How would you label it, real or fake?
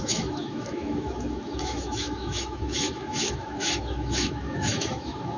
fake